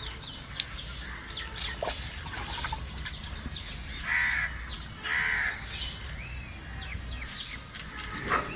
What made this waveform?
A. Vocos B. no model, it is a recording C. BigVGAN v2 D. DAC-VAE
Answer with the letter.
B